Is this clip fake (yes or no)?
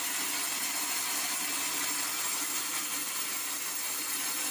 no